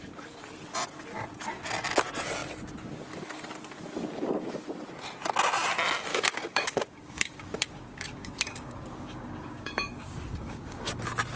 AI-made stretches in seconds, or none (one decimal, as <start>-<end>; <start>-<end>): 6.1-10.9